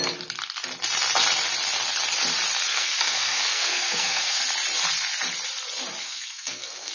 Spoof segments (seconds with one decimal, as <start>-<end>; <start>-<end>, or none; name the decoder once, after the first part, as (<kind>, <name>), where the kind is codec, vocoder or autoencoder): 2.7-4.4 (codec, SNAC); 6.0-6.9